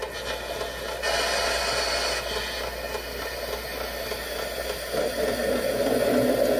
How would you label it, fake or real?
real